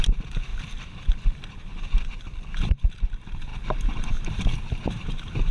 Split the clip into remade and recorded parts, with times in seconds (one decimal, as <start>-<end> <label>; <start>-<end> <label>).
0.0-0.5 remade; 0.5-3.0 recorded; 3.0-5.5 remade